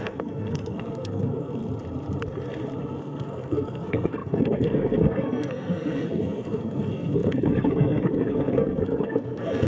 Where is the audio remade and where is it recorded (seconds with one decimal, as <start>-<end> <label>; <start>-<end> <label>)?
0.0-1.6 remade; 1.6-2.8 recorded; 2.8-9.7 remade